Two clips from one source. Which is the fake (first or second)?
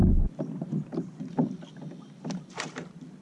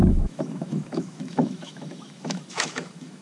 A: second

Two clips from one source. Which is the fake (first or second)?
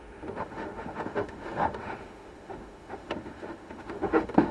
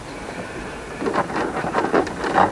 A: first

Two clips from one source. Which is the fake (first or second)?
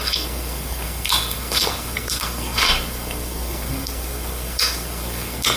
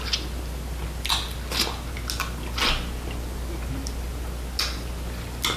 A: first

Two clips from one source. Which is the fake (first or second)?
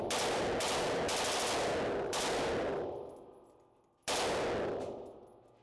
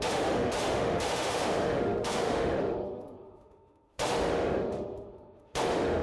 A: second